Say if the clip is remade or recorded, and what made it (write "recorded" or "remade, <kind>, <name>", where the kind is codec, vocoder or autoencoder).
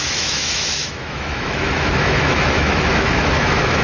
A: remade, autoencoder, DAC-VAE